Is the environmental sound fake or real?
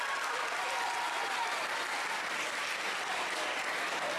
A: real